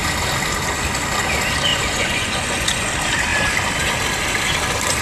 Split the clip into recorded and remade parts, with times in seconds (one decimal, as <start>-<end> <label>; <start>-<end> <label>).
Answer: 0.0-1.7 recorded; 1.7-2.9 remade; 2.9-5.0 recorded